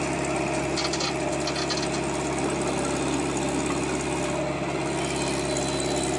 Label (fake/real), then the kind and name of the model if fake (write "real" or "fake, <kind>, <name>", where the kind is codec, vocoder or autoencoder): real